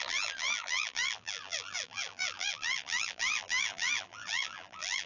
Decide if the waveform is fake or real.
fake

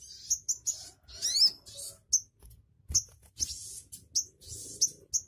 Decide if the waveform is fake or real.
real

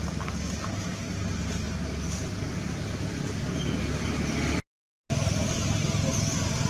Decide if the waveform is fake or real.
real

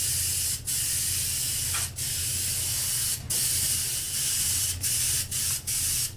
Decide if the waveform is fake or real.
real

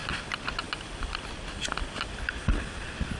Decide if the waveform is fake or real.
real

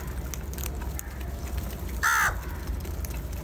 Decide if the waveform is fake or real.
real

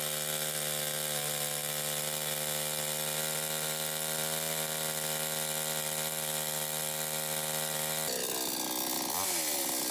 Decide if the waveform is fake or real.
real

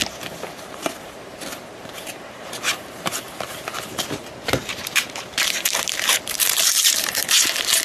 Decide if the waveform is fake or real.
fake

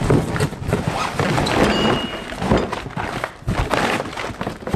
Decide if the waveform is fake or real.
fake